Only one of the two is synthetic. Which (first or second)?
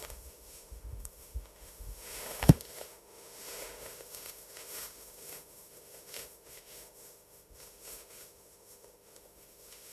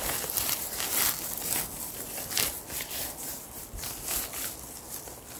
first